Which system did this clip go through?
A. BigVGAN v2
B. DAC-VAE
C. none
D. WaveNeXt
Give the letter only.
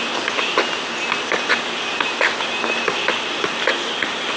A